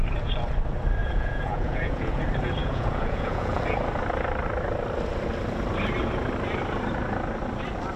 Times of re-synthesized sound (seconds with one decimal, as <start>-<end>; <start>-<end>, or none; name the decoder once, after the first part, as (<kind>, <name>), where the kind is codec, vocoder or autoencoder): 1.0-2.2 (vocoder, Vocos); 2.6-3.6